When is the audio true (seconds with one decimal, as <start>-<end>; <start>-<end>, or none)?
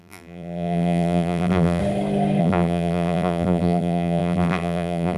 1.8-2.4